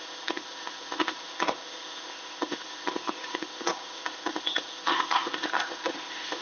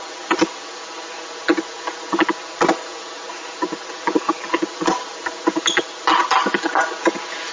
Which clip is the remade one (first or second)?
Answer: first